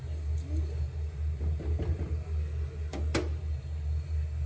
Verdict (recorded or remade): recorded